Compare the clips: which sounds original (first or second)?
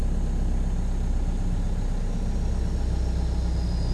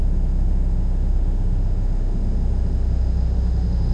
first